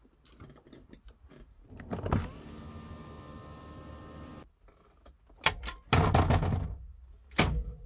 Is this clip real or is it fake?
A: real